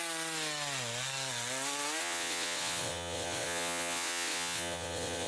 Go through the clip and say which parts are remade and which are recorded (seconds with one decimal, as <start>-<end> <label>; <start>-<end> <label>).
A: 0.0-2.0 recorded; 2.0-5.3 remade